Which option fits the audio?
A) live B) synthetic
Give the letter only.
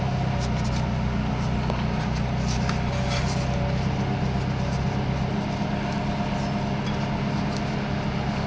A